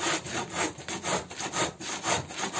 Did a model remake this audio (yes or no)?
no